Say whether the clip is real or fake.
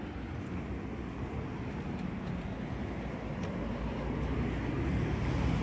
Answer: real